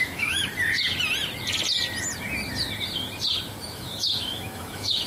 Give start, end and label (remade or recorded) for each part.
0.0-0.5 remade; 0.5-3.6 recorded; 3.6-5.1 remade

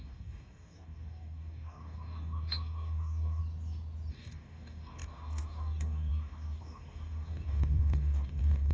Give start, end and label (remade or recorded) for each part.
0.0-3.4 remade; 3.4-4.1 recorded; 4.1-8.7 remade